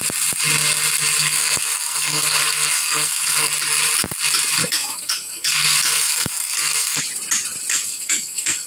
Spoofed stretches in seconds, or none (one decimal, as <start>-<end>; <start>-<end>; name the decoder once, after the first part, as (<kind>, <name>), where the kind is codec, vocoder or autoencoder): 1.2-3.5 (codec, SNAC); 4.6-7.0; 7.7-8.7